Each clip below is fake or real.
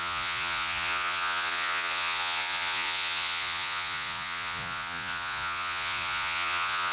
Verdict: fake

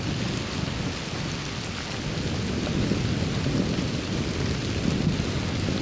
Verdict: real